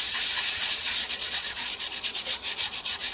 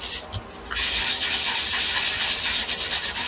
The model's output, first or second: first